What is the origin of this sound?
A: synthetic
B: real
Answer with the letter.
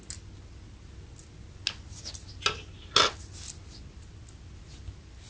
B